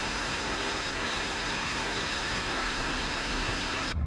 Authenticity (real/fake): fake